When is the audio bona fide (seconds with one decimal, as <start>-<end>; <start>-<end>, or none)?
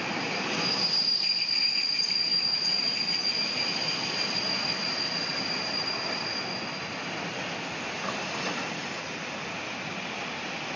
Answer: 0.0-10.8